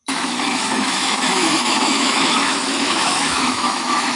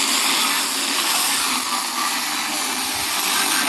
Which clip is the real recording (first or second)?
second